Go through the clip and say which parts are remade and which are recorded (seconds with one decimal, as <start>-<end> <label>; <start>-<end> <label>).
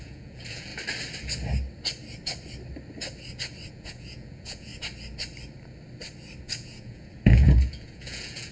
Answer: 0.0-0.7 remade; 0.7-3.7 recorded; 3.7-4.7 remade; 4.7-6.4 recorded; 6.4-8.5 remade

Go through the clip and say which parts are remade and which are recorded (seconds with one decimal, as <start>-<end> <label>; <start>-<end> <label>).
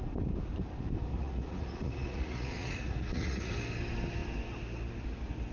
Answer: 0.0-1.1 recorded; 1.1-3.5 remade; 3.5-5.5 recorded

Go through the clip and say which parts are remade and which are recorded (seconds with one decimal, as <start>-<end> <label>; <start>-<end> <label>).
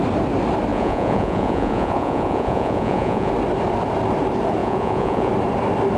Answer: 0.0-0.7 recorded; 0.7-3.3 remade; 3.3-4.6 recorded; 4.6-5.3 remade; 5.3-6.0 recorded